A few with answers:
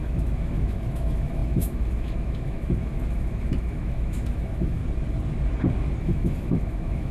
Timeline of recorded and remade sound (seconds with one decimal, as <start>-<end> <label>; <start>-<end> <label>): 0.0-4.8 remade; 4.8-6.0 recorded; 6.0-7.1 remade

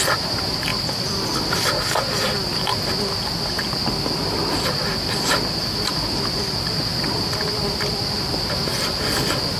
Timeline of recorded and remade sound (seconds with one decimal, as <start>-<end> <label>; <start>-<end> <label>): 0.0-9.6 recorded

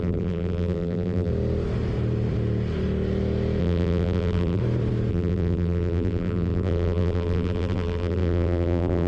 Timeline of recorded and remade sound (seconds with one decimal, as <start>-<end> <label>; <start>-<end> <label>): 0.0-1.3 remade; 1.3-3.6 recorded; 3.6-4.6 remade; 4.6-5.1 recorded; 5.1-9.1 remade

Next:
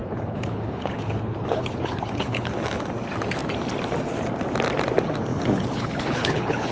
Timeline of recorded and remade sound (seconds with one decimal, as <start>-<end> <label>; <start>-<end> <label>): 0.0-2.5 remade; 2.5-5.3 recorded; 5.3-6.7 remade

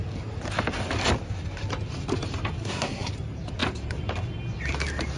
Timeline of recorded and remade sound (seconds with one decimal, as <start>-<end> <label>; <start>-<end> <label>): 0.0-2.6 recorded; 2.6-3.1 remade; 3.1-5.2 recorded